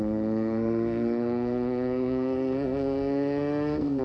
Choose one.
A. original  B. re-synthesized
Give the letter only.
B